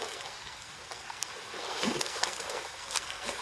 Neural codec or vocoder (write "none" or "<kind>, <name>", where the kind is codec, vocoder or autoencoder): codec, SNAC